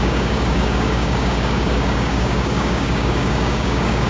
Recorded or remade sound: remade